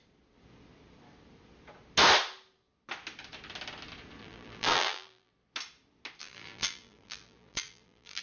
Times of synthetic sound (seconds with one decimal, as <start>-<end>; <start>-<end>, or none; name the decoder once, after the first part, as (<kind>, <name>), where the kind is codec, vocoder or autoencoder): 4.2-5.3 (vocoder, BigVGAN v2); 6.2-8.2